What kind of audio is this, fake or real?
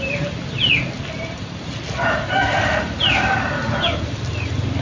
real